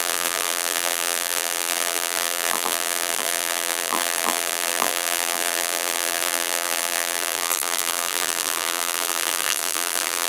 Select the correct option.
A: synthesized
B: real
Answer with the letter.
A